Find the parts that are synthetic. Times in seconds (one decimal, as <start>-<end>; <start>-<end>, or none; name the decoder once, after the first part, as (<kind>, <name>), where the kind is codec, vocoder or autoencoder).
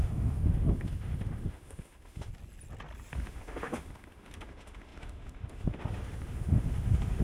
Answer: 0.0-2.3 (autoencoder, DAC-VAE); 3.1-7.2